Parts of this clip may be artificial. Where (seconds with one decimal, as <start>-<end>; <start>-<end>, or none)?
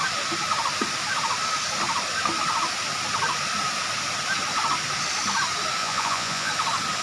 5.8-6.5